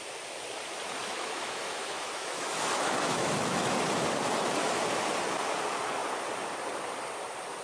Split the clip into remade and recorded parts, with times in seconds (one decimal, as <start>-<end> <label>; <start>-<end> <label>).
0.0-1.0 recorded; 1.0-3.8 remade; 3.8-7.6 recorded

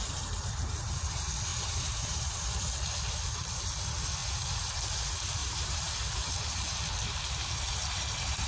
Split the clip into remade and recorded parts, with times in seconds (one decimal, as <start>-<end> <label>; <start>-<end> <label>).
0.0-1.5 recorded; 1.5-2.6 remade; 2.6-5.4 recorded; 5.4-5.9 remade; 5.9-8.5 recorded

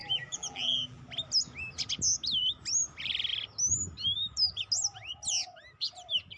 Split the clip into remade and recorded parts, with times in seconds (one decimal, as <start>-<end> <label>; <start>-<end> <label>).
0.0-1.0 remade; 1.0-6.4 recorded

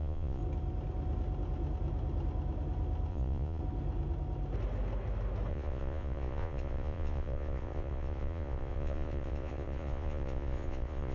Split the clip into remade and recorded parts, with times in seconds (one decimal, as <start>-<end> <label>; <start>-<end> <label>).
0.0-0.4 remade; 0.4-3.1 recorded; 3.1-3.6 remade; 3.6-5.5 recorded; 5.5-11.1 remade

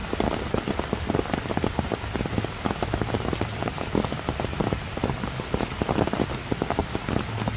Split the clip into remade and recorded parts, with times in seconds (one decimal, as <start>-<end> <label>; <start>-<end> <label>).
0.0-1.0 remade; 1.0-6.8 recorded; 6.8-7.6 remade

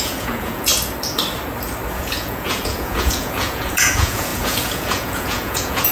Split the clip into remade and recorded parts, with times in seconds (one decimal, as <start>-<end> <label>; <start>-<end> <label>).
0.0-0.7 remade; 0.7-1.9 recorded; 1.9-5.9 remade

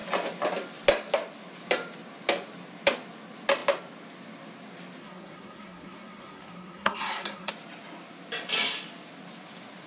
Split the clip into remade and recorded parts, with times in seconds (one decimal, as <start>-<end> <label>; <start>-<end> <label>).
0.0-5.0 recorded; 5.0-7.5 remade; 7.5-9.9 recorded